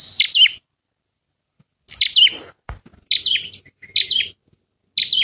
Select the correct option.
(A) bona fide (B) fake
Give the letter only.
A